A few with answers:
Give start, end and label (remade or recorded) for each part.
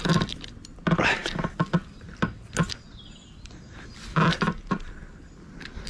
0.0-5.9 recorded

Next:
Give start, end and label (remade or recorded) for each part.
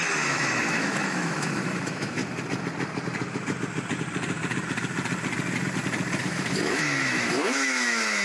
0.0-2.2 remade; 2.2-6.2 recorded; 6.2-8.2 remade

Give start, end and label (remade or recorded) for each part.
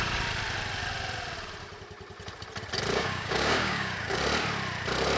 0.0-2.9 recorded; 2.9-4.2 remade; 4.2-5.2 recorded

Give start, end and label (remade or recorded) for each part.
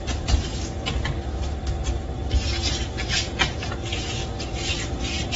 0.0-5.4 recorded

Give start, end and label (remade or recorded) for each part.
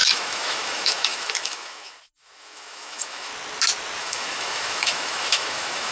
0.0-3.3 remade; 3.3-4.0 recorded; 4.0-5.9 remade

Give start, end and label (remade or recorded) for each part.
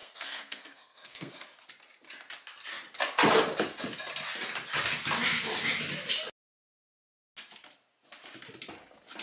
0.0-1.3 remade; 1.3-9.2 recorded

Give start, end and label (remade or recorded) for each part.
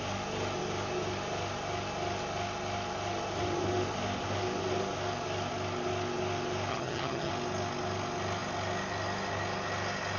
0.0-6.7 recorded; 6.7-7.3 remade; 7.3-10.2 recorded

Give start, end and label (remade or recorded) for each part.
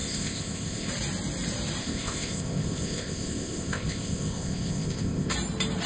0.0-0.9 remade; 0.9-1.8 recorded; 1.8-5.3 remade; 5.3-5.9 recorded